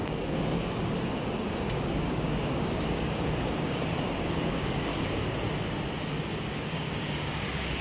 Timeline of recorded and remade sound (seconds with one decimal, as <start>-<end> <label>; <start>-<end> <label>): 0.0-4.9 remade; 4.9-6.4 recorded; 6.4-7.8 remade